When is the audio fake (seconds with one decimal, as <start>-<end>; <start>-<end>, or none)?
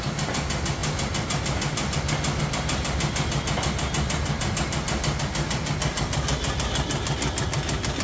none